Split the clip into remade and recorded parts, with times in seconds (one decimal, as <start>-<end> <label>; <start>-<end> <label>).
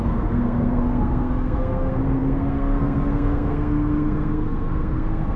0.0-5.4 remade